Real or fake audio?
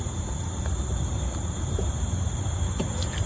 fake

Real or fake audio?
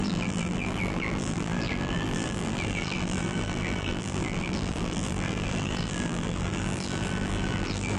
fake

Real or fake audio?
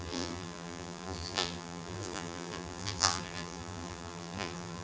fake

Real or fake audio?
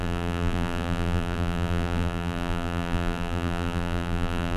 fake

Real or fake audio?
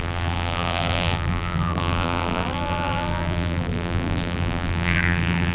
fake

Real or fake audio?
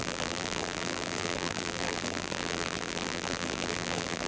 fake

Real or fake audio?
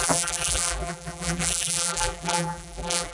fake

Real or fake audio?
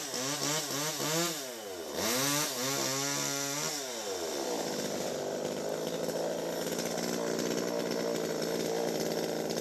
real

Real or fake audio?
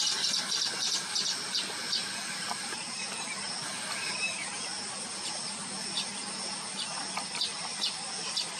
fake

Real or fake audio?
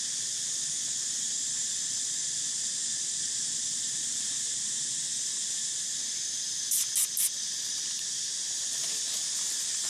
fake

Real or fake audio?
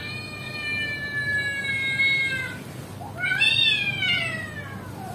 real